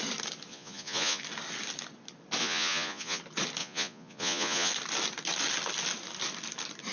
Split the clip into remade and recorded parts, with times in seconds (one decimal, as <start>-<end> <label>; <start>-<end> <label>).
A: 0.0-0.5 recorded; 0.5-1.2 remade; 1.2-2.4 recorded; 2.4-3.2 remade; 3.2-3.6 recorded; 3.6-4.7 remade; 4.7-6.9 recorded